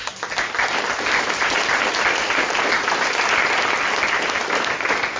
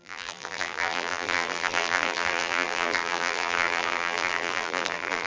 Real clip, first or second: first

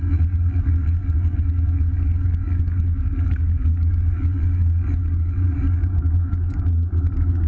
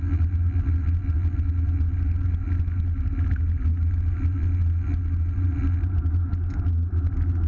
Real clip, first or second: second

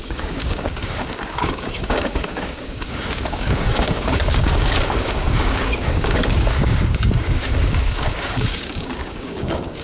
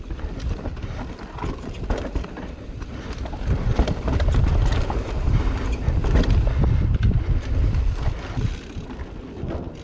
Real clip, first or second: second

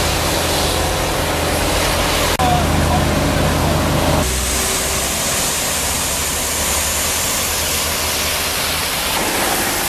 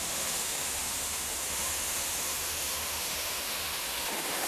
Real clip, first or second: first